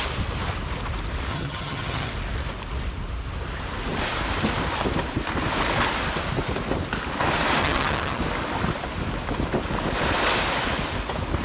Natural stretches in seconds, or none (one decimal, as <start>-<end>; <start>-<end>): 0.0-1.3; 2.1-7.6; 8.2-11.4